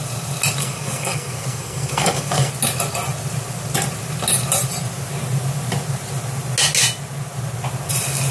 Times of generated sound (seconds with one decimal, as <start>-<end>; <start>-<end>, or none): 0.6-2.5